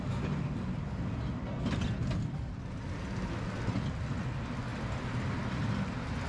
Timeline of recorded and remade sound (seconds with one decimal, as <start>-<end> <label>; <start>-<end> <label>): 0.0-6.3 recorded